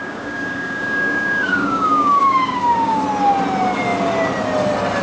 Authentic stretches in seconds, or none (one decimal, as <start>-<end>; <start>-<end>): 3.0-5.0